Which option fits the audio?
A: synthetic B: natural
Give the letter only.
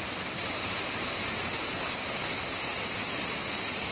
B